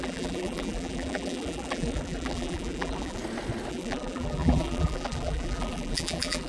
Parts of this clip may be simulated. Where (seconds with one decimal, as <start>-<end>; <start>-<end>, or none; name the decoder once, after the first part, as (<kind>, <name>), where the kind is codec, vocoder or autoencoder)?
0.0-3.2 (vocoder, BigVGAN v2); 3.7-6.5